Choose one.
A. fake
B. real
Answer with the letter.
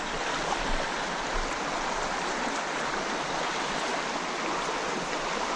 B